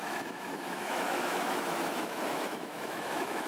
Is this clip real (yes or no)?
no